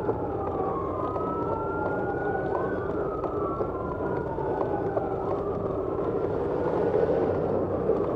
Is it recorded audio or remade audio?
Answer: recorded